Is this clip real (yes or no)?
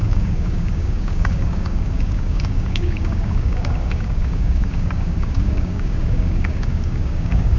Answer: no